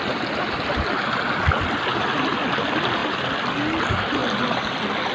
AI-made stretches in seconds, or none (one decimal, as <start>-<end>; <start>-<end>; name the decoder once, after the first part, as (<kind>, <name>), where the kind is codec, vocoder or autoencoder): 0.0-1.9 (vocoder, BigVGAN v2); 2.5-3.0; 3.8-5.1